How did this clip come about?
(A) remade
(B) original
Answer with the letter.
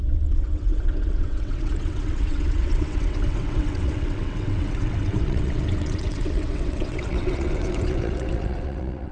A